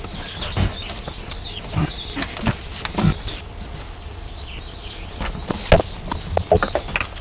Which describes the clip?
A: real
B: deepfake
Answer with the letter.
A